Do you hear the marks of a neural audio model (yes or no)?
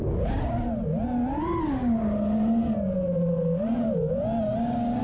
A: no